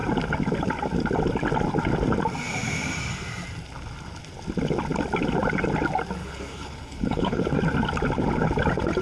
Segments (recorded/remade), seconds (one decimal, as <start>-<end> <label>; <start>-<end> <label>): 0.0-6.2 recorded; 6.2-7.4 remade; 7.4-9.0 recorded